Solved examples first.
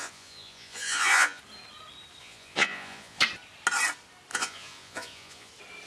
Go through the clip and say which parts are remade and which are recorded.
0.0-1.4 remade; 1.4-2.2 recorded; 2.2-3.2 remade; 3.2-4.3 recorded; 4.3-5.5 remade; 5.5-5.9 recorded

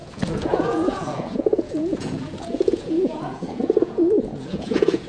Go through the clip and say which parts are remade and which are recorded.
0.0-5.1 remade

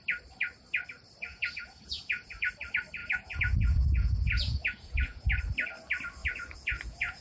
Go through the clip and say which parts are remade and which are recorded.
0.0-1.3 recorded; 1.3-2.5 remade; 2.5-3.0 recorded; 3.0-5.4 remade; 5.4-6.2 recorded; 6.2-7.2 remade

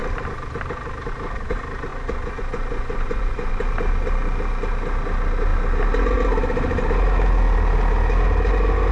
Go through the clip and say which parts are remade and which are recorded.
0.0-1.9 recorded; 1.9-3.6 remade; 3.6-8.9 recorded

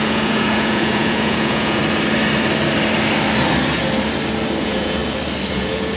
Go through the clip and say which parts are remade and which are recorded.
0.0-1.8 remade; 1.8-4.6 recorded; 4.6-5.0 remade; 5.0-5.5 recorded; 5.5-6.0 remade